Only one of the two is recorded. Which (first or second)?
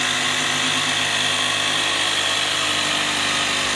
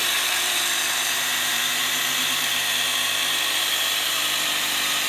first